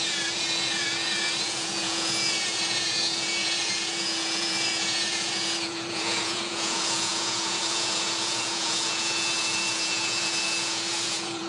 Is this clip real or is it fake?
fake